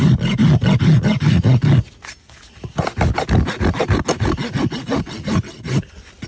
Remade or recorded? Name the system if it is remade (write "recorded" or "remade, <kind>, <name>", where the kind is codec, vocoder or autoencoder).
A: recorded